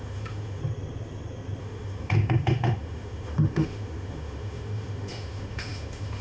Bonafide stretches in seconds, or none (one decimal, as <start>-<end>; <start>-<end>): 0.6-1.6